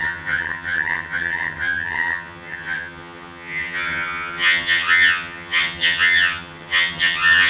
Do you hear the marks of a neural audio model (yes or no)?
yes